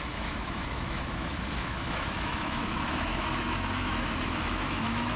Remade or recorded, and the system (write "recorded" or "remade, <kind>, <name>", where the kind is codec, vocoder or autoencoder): remade, autoencoder, DAC-VAE